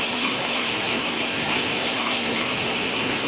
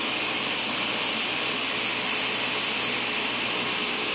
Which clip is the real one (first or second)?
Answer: second